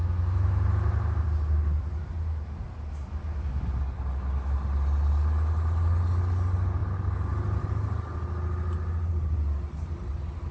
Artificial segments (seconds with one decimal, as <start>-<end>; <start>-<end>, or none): none